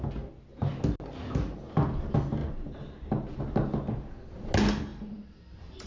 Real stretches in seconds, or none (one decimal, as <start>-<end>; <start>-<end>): 0.0-2.4; 3.4-4.9